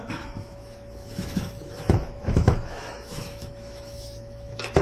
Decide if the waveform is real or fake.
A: fake